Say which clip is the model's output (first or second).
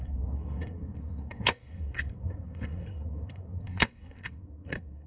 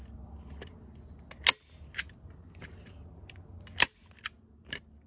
first